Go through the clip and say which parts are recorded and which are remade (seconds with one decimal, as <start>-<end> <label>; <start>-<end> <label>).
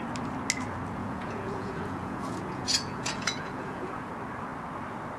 0.0-1.0 recorded; 1.0-4.1 remade; 4.1-5.2 recorded